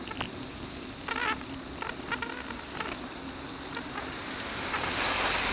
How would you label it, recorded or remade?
recorded